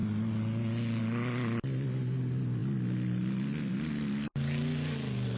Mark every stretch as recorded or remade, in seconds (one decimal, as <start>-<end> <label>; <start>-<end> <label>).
0.0-5.4 recorded